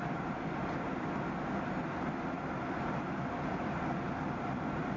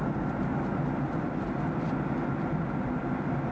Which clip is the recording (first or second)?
second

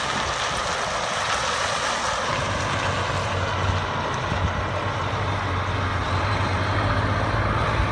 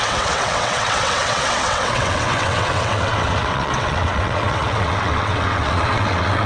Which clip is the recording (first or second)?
first